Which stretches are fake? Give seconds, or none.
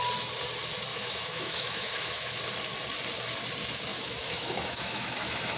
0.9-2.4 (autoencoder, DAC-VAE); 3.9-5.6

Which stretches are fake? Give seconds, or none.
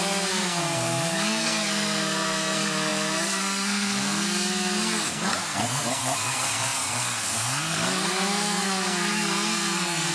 0.0-10.1 (codec, SNAC)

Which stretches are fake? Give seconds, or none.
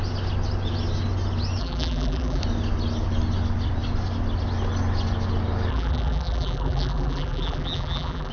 1.6-2.4 (vocoder, BigVGAN v2); 5.7-8.3